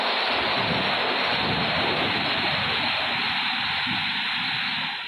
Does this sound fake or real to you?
real